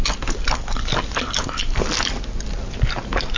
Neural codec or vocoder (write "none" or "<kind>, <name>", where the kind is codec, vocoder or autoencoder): none